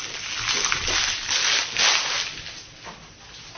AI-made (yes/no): no